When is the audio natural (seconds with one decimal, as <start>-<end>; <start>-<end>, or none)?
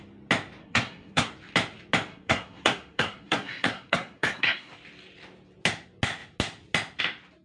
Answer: 0.0-0.6; 1.3-2.1; 4.7-7.4